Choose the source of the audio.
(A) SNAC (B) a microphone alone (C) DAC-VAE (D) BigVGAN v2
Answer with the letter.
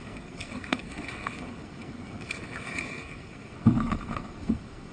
A